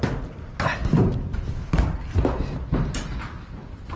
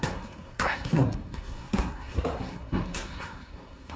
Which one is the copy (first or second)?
second